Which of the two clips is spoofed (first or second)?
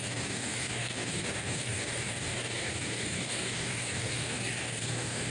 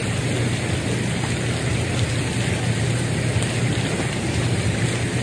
first